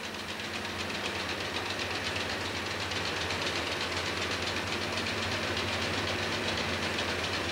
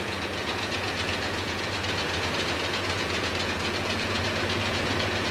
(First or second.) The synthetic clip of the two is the second